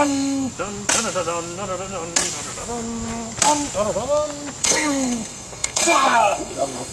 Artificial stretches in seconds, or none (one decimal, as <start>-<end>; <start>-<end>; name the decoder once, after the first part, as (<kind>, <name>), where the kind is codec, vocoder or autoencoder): 0.0-0.5 (codec, SNAC); 4.6-6.9

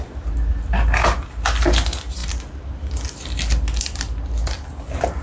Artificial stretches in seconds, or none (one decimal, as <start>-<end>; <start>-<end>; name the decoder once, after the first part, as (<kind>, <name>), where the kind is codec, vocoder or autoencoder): none

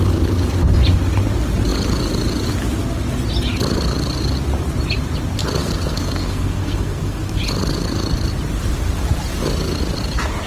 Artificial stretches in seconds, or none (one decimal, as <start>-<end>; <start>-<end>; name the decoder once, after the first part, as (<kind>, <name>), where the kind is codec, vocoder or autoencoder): 5.6-7.4 (codec, SNAC)